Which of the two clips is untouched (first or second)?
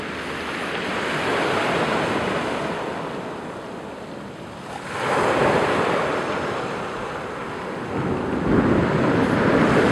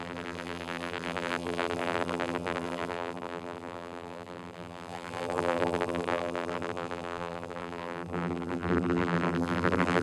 first